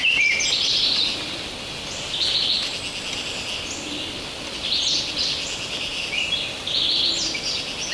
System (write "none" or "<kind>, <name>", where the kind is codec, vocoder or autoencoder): none